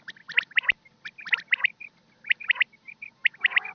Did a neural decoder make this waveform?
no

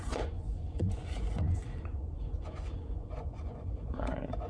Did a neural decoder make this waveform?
yes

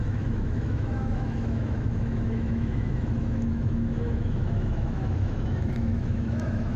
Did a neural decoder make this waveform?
yes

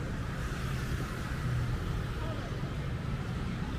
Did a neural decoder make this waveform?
yes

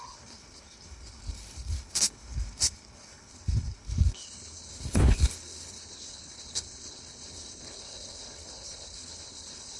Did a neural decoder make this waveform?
yes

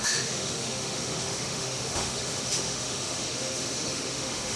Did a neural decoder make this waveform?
yes